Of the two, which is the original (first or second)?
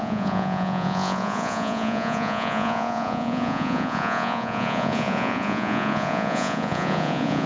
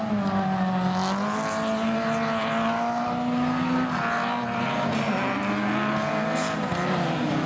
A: second